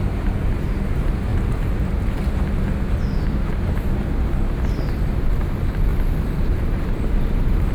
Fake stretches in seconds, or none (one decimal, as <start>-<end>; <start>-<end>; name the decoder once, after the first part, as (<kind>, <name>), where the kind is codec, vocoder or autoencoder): 1.3-2.1 (vocoder, BigVGAN v2); 5.9-7.7